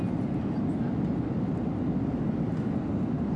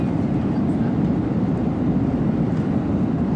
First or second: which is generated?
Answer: second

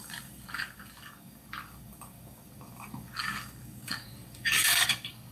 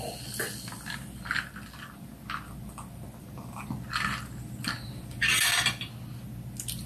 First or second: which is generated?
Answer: first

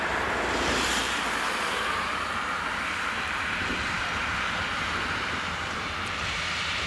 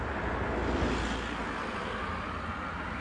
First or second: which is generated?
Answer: first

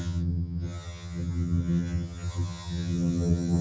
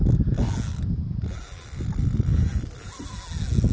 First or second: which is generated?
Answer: first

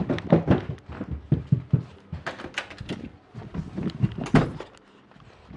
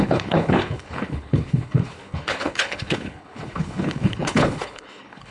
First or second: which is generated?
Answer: second